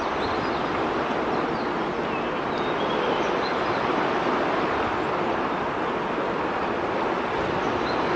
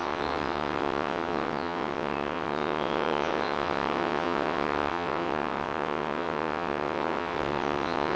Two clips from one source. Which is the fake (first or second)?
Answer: second